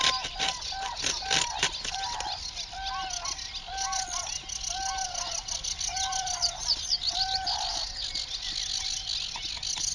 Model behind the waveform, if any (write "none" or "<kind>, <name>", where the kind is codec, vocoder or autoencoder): none